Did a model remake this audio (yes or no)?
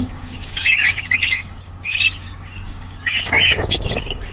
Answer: yes